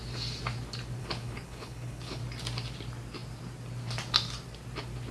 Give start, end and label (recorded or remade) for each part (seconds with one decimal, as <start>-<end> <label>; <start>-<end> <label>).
0.0-1.0 recorded; 1.0-2.2 remade; 2.2-5.1 recorded